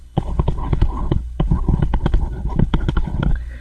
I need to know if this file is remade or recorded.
remade